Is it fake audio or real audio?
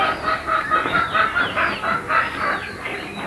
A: real